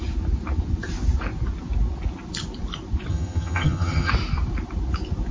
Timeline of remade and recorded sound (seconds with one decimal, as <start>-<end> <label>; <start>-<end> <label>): 0.0-3.1 recorded; 3.1-4.1 remade; 4.1-5.3 recorded